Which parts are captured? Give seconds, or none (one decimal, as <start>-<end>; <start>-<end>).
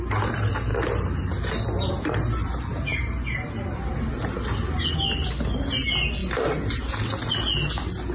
0.0-8.1